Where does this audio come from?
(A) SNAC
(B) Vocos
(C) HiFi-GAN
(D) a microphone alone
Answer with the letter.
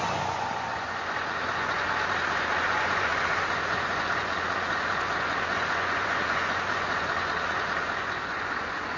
B